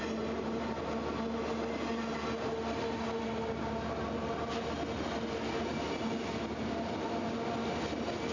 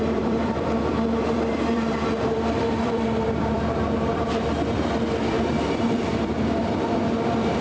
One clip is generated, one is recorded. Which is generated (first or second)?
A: second